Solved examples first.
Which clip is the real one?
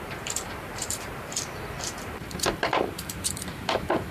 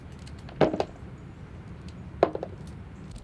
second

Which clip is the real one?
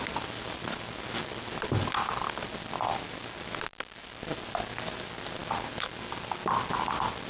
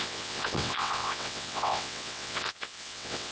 first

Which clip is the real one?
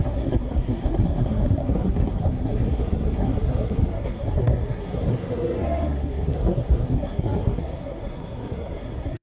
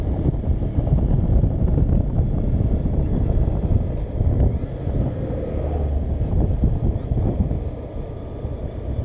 second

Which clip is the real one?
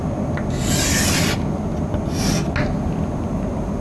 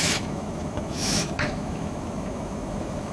first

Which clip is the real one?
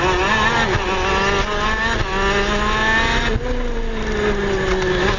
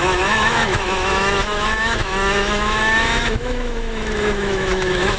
first